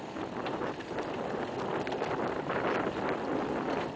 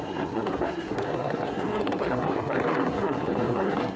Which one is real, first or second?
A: first